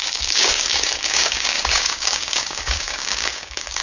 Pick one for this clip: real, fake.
fake